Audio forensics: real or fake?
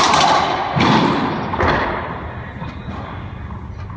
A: real